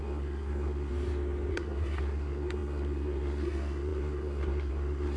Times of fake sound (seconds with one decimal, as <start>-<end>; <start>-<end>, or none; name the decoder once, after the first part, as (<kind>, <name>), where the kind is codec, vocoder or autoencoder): 0.0-0.9 (codec, SNAC); 1.5-5.2